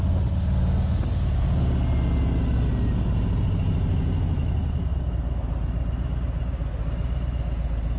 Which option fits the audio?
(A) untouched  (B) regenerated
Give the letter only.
A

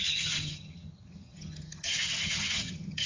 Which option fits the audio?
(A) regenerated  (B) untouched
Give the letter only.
A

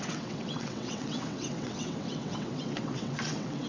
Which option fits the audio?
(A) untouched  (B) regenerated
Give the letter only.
B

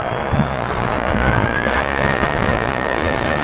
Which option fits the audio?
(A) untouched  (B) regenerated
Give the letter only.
B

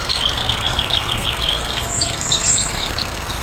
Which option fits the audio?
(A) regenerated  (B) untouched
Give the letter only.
A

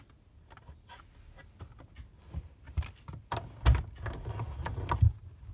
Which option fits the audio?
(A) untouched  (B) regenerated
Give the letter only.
A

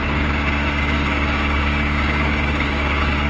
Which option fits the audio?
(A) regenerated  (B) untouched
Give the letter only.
A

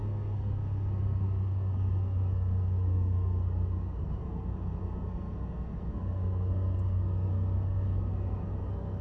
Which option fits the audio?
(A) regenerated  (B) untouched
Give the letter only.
A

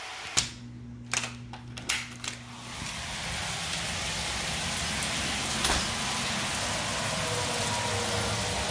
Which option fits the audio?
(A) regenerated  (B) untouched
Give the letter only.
B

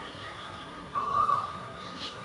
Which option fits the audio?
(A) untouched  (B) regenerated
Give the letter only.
B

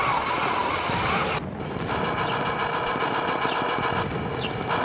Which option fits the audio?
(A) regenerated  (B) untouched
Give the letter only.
B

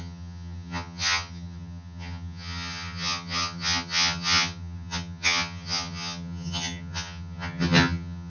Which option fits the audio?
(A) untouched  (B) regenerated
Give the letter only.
B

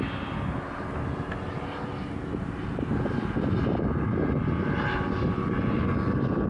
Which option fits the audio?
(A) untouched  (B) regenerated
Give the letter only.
A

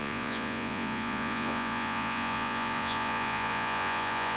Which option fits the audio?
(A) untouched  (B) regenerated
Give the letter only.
B